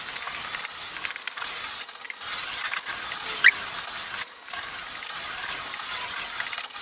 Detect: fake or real real